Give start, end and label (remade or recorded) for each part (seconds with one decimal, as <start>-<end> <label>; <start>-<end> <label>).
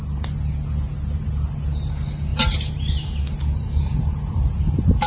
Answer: 0.0-5.1 recorded